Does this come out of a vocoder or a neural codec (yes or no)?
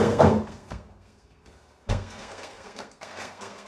yes